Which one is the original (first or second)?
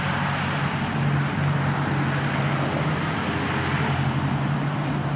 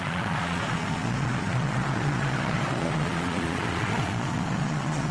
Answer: first